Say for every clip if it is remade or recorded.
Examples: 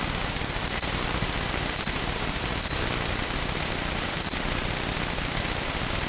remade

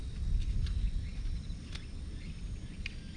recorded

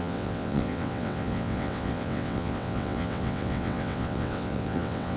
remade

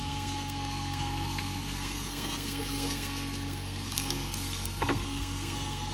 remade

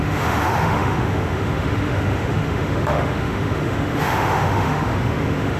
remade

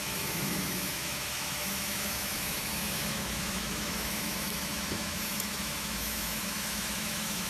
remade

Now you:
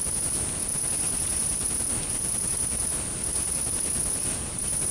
recorded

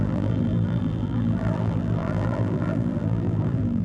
remade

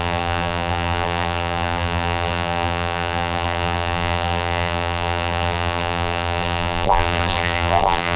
remade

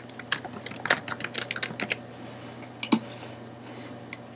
recorded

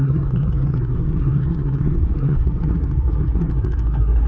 remade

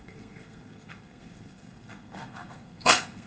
remade